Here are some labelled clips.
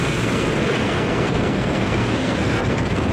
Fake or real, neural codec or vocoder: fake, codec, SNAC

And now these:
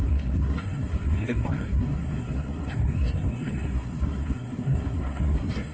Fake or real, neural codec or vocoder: fake, codec, SNAC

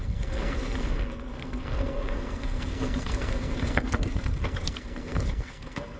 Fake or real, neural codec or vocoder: fake, codec, SNAC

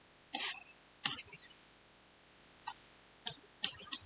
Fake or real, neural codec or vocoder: real